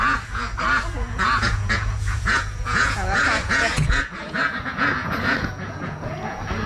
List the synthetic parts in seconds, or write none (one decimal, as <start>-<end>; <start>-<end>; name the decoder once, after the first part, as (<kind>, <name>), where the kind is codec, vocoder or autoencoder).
0.0-0.5 (vocoder, Vocos); 1.0-6.7